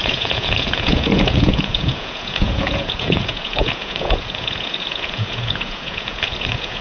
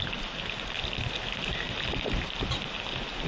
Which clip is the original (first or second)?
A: second